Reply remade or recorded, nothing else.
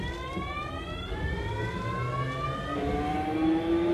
recorded